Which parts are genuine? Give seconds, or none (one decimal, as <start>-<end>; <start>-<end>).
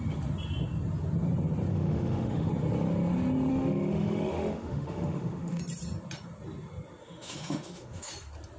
0.0-1.7; 2.5-3.5; 5.6-7.0; 8.1-8.6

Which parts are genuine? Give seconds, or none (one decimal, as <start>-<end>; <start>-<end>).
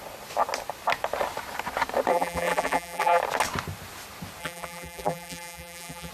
0.0-2.1; 3.2-4.4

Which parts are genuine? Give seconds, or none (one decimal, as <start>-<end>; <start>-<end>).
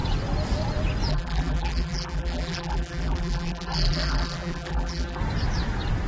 0.0-1.1; 5.2-6.1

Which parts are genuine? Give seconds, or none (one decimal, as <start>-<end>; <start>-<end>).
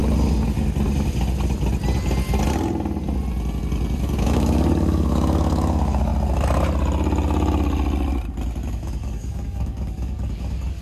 0.0-4.0; 6.1-8.6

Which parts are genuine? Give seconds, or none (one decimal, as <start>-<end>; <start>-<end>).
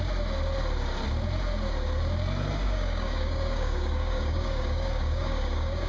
0.0-2.6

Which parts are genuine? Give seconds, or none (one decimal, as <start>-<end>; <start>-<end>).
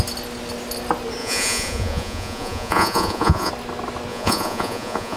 0.0-1.2; 3.5-4.1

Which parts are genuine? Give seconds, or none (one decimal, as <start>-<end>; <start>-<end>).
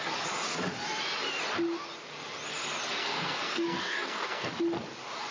0.0-3.0; 4.5-5.3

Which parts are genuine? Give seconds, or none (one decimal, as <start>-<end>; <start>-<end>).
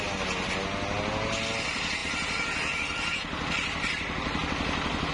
0.0-2.0